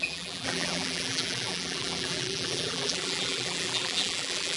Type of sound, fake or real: fake